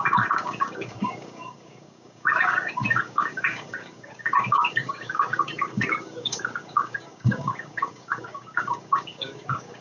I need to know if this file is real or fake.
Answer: fake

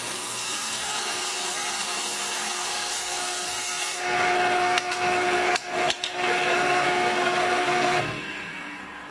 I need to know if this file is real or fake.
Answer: fake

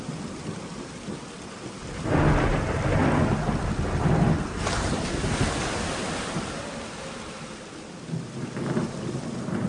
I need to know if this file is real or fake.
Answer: real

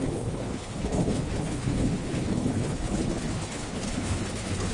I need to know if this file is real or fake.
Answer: fake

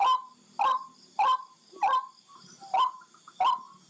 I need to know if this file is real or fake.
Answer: real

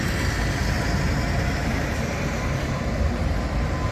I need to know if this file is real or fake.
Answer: real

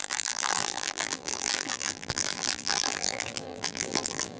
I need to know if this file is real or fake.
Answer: fake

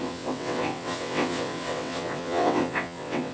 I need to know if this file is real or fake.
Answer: fake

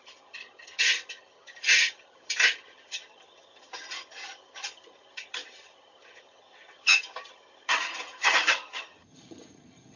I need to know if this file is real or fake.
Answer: fake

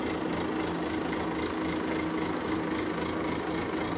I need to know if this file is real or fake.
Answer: real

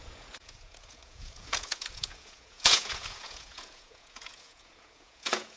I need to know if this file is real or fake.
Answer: fake